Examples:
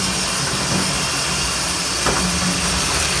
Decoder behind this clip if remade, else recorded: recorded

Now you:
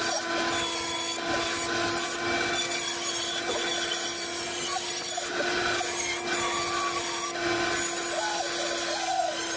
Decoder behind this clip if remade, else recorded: recorded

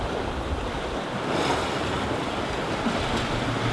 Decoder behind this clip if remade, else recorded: recorded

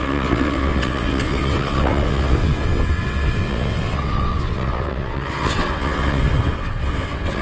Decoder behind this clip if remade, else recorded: remade, vocoder, WaveNeXt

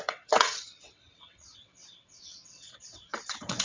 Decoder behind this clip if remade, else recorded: remade, vocoder, WaveNeXt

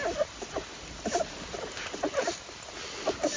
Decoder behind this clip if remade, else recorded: recorded